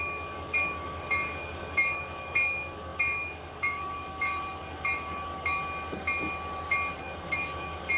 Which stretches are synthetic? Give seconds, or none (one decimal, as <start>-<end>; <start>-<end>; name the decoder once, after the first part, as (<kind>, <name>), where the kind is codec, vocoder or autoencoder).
0.0-5.6 (codec, DAC); 7.0-8.0